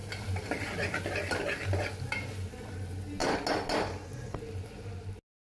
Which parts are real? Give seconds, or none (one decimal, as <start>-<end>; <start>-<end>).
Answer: 0.0-5.5